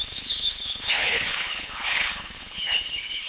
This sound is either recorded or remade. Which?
remade